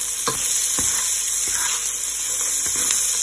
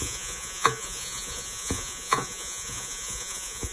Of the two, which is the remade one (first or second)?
second